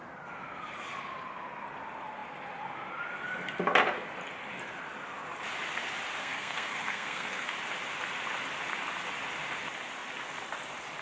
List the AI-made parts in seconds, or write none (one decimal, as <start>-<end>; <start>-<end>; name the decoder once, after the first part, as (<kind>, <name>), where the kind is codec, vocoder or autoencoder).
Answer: 6.2-7.5 (codec, SNAC)